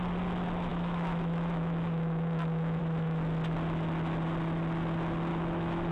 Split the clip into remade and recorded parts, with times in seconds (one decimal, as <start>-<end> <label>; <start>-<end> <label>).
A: 0.0-0.7 recorded; 0.7-2.8 remade; 2.8-5.3 recorded; 5.3-5.9 remade